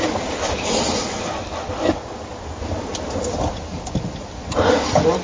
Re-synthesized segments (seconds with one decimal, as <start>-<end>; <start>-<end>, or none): none